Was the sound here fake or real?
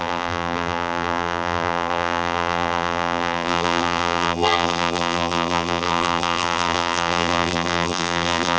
fake